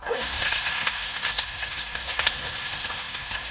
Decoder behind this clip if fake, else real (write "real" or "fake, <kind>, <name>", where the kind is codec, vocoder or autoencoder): fake, codec, SNAC